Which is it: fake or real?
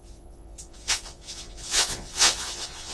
fake